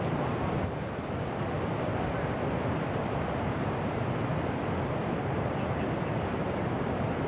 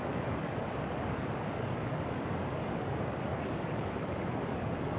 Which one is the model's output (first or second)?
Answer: second